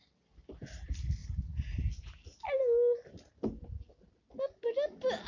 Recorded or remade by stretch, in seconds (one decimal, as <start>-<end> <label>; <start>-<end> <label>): 0.0-5.3 recorded